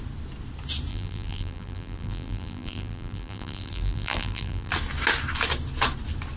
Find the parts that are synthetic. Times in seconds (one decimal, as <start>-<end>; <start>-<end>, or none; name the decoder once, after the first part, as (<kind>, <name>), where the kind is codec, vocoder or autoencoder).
0.9-4.7 (vocoder, BigVGAN v2)